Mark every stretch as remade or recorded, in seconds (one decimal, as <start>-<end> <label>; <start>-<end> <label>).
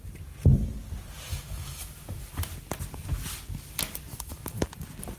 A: 0.0-1.3 recorded; 1.3-2.3 remade; 2.3-4.1 recorded; 4.1-4.7 remade; 4.7-5.2 recorded